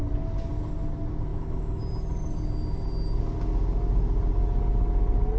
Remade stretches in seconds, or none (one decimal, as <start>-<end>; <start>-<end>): 1.3-1.8